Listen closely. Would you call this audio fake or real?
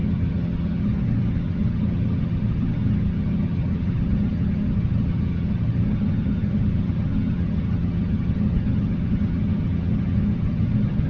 fake